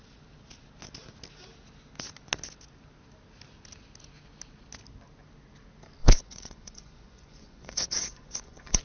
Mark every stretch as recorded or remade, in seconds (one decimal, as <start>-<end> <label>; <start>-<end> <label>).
0.0-6.0 recorded; 6.0-8.8 remade